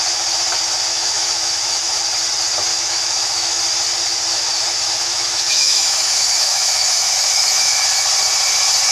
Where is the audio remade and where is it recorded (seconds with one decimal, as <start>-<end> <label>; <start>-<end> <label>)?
0.0-0.9 recorded; 0.9-2.0 remade; 2.0-2.7 recorded; 2.7-3.6 remade; 3.6-4.3 recorded; 4.3-7.8 remade; 7.8-8.9 recorded